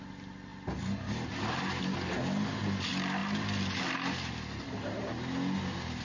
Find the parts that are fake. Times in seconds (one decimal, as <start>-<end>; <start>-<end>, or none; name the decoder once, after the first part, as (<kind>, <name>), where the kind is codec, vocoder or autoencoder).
none